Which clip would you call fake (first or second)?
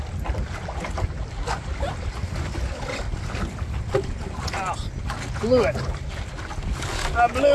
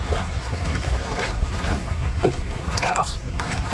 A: second